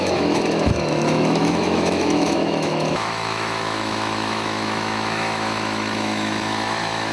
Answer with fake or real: fake